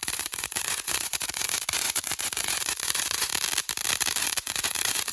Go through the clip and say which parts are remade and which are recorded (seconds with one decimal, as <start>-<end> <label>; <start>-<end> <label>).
0.0-3.3 remade; 3.3-4.2 recorded; 4.2-5.1 remade